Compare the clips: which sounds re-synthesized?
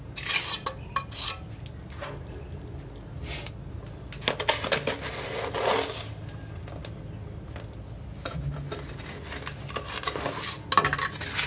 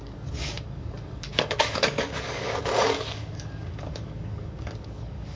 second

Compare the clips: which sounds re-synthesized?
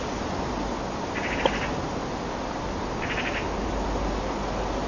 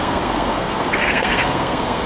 second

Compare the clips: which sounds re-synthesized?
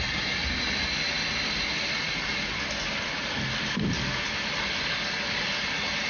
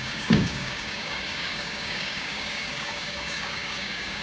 second